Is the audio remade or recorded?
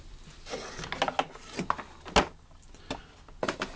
recorded